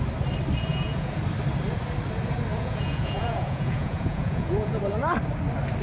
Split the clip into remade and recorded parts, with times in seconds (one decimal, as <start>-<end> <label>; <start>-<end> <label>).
0.0-0.7 recorded; 0.7-1.2 remade; 1.2-2.5 recorded; 2.5-4.8 remade; 4.8-5.8 recorded